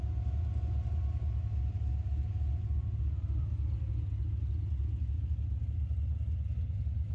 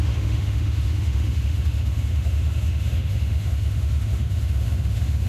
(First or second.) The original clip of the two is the first